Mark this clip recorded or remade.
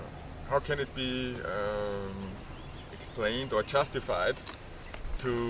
recorded